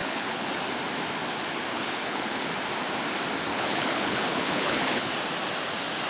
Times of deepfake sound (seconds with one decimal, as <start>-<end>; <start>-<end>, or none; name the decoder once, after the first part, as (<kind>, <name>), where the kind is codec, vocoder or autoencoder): 0.0-0.5 (codec, HILCodec); 1.7-2.5; 3.5-5.1